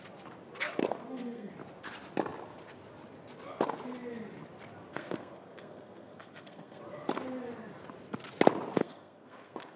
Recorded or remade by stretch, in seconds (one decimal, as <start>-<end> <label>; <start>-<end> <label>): 0.0-0.8 recorded; 0.8-1.5 remade; 1.5-4.9 recorded; 4.9-6.8 remade; 6.8-8.8 recorded; 8.8-9.8 remade